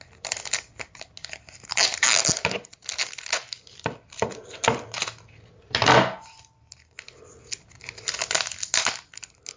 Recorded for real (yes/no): yes